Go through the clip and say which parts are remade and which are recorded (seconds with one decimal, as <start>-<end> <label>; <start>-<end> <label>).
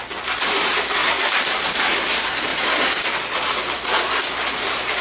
0.0-1.0 recorded; 1.0-2.0 remade; 2.0-5.0 recorded